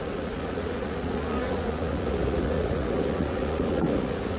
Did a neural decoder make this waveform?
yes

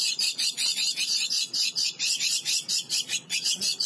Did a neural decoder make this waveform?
yes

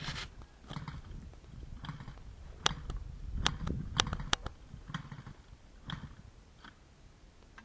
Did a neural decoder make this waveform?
no